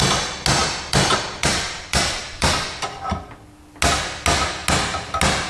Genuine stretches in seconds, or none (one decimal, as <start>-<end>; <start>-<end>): 0.0-0.6; 3.0-5.5